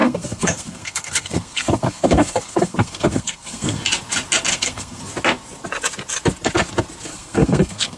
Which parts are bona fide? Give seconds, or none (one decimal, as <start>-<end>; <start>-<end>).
3.8-4.5; 5.0-7.1